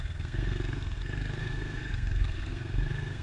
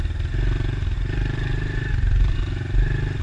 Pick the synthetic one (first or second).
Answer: first